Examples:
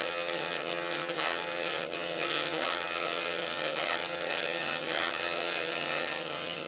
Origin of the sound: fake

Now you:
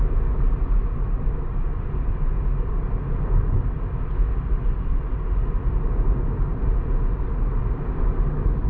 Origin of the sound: real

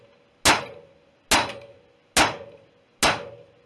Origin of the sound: real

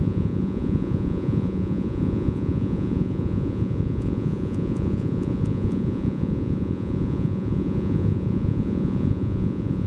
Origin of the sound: fake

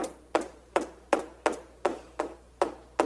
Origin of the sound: real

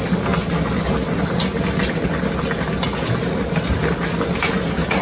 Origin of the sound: real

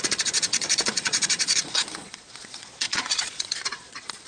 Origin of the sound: fake